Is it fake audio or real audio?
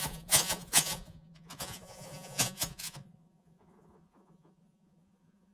fake